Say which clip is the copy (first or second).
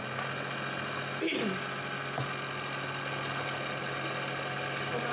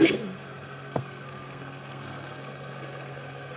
second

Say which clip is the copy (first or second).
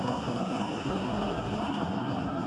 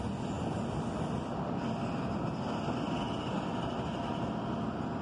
first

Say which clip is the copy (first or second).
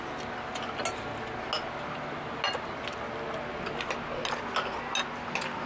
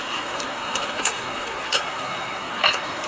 second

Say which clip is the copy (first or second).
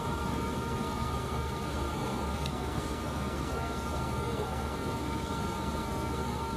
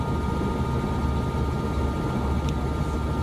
first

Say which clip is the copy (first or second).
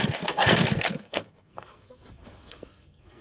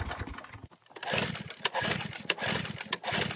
first